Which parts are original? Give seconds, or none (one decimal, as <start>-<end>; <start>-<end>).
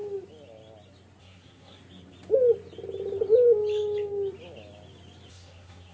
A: 0.0-1.2; 1.8-5.3